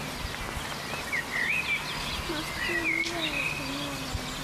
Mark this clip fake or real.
real